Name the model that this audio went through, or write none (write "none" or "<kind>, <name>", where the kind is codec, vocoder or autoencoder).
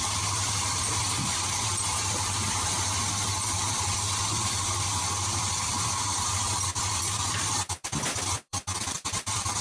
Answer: vocoder, BigVGAN v2